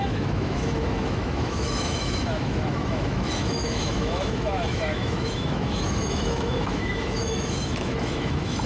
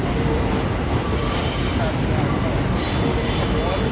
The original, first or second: second